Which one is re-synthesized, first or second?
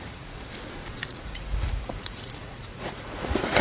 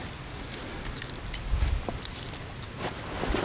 first